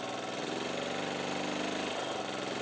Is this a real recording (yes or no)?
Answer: yes